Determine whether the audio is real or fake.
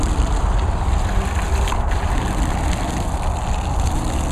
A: real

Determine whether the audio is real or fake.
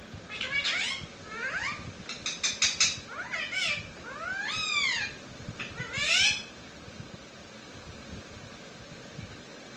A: real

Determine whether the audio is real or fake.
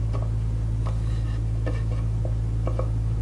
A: real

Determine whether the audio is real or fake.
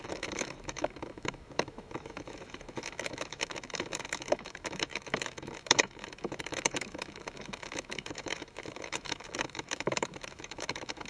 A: fake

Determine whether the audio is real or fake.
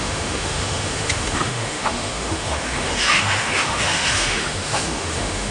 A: fake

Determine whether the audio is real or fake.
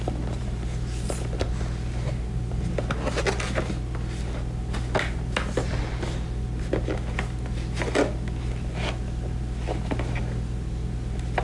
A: real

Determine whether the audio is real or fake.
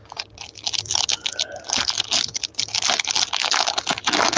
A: real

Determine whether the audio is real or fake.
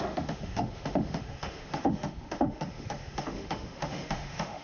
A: fake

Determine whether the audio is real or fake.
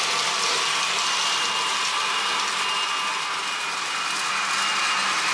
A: real